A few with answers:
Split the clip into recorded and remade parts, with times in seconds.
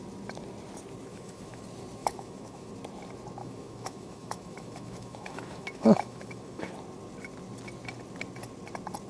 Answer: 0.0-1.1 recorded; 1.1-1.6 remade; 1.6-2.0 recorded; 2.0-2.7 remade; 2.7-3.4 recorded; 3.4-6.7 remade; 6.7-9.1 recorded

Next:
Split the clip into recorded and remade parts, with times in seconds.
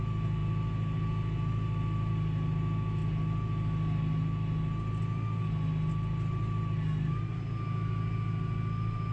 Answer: 0.0-9.1 recorded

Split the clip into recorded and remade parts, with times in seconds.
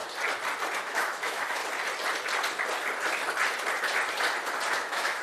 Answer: 0.0-0.8 recorded; 0.8-1.6 remade; 1.6-4.7 recorded; 4.7-5.2 remade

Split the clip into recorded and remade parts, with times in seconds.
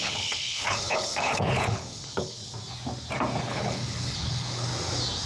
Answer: 0.0-2.4 remade; 2.4-3.4 recorded; 3.4-4.7 remade; 4.7-5.3 recorded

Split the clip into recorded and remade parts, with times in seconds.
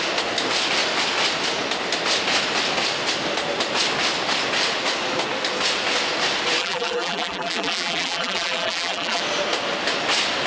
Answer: 0.0-6.6 recorded; 6.6-9.2 remade; 9.2-10.5 recorded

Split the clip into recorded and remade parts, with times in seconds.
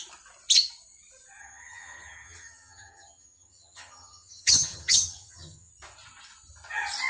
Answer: 0.0-1.4 recorded; 1.4-5.7 remade; 5.7-7.1 recorded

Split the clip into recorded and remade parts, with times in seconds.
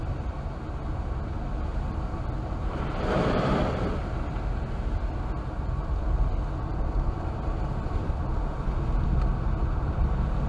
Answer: 0.0-1.7 recorded; 1.7-3.1 remade; 3.1-6.7 recorded; 6.7-8.1 remade; 8.1-10.5 recorded